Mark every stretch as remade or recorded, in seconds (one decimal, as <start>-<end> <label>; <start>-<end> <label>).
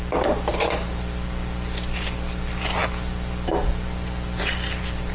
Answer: 0.0-5.1 recorded